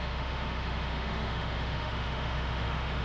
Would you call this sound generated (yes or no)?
yes